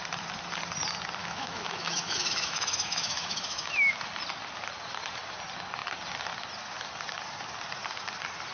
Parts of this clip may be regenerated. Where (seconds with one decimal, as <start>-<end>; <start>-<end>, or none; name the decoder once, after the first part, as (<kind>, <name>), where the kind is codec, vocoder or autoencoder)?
1.2-3.9 (autoencoder, DAC-VAE)